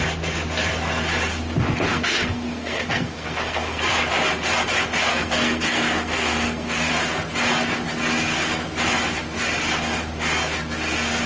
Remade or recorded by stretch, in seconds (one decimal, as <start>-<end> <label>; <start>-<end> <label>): 0.0-1.9 recorded; 1.9-3.8 remade; 3.8-5.1 recorded; 5.1-6.9 remade; 6.9-11.3 recorded